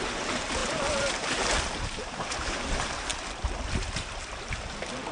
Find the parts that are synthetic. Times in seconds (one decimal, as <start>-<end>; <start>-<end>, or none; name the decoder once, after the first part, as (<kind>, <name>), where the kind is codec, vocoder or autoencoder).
0.0-3.1 (vocoder, BigVGAN v2)